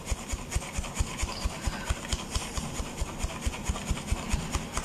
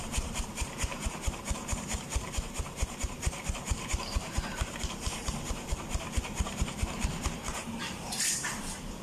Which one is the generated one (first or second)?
second